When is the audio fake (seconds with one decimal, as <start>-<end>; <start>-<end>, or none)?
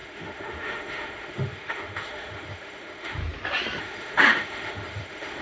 0.0-3.2; 3.8-5.4